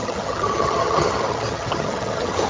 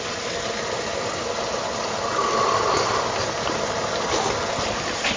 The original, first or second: second